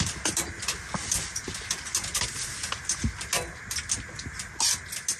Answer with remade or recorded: recorded